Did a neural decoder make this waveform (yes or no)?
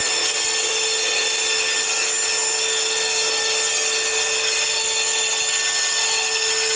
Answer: no